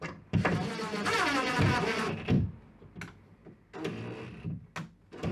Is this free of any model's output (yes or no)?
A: yes